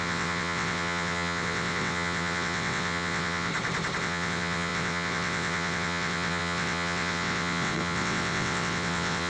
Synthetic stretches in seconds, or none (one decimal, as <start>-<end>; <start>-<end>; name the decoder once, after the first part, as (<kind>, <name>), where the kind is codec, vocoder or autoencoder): 0.0-3.5 (vocoder, WaveNeXt); 4.0-9.3